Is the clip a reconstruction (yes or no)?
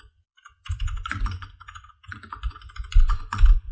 yes